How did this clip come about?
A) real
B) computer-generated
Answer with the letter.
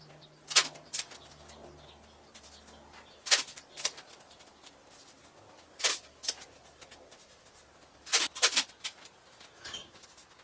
A